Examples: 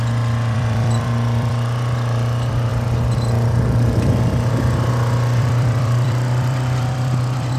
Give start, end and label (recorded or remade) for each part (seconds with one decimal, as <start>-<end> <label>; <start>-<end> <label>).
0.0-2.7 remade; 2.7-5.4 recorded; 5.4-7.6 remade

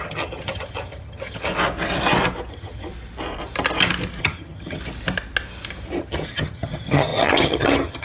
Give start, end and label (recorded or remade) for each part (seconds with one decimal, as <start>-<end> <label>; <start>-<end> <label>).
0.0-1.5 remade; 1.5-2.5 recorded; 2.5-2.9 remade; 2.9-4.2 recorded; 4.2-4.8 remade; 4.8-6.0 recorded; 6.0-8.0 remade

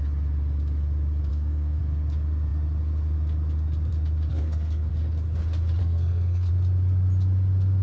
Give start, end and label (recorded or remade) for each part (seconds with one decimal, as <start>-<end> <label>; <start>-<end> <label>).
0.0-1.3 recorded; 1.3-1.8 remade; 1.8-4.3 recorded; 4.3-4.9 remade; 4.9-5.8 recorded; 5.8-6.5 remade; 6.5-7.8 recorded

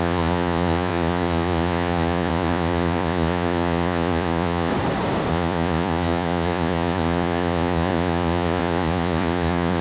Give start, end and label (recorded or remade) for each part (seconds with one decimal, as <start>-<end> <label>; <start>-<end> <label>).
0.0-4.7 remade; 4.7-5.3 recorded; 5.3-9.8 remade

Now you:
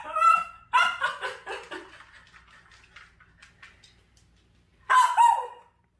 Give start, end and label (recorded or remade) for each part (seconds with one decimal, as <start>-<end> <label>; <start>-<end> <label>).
0.0-4.7 recorded; 4.7-5.6 remade; 5.6-6.0 recorded

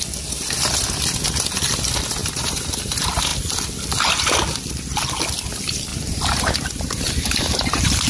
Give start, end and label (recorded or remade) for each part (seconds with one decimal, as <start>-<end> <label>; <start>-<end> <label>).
0.0-2.2 recorded; 2.2-2.9 remade; 2.9-5.9 recorded; 5.9-8.1 remade

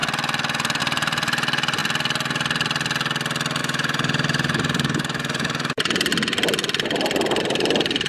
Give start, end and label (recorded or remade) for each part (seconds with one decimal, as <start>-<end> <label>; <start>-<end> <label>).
0.0-1.8 remade; 1.8-3.6 recorded; 3.6-6.1 remade; 6.1-7.4 recorded; 7.4-8.1 remade